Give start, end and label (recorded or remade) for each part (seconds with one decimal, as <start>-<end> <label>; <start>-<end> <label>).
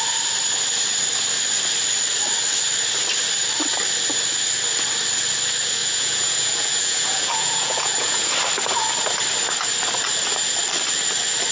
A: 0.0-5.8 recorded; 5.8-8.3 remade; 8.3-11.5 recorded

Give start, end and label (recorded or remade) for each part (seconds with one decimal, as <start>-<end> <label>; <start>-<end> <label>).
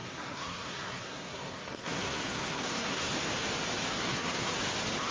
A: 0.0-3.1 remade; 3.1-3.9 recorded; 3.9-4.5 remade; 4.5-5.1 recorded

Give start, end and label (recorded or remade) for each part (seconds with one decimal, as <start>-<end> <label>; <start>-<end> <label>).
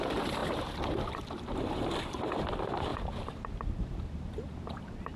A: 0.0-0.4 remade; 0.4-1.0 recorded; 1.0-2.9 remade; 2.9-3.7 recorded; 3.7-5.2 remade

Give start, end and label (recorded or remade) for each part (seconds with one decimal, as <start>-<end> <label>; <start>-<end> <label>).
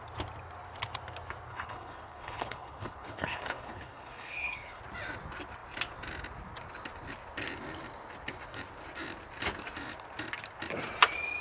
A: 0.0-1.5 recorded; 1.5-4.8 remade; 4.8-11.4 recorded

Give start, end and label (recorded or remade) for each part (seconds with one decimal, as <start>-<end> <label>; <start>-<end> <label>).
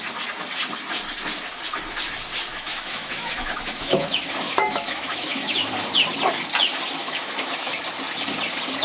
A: 0.0-2.5 recorded; 2.5-5.7 remade; 5.7-7.0 recorded; 7.0-7.8 remade; 7.8-8.8 recorded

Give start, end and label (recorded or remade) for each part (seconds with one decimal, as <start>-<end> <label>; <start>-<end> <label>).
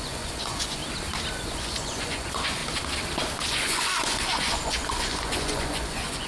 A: 0.0-0.8 remade; 0.8-1.4 recorded; 1.4-2.6 remade; 2.6-3.5 recorded; 3.5-6.3 remade